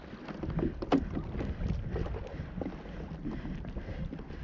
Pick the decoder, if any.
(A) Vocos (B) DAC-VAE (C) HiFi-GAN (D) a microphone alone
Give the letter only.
D